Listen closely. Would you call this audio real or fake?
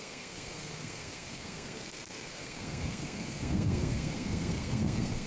fake